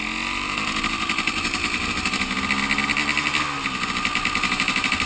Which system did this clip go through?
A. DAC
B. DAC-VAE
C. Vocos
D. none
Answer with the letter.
D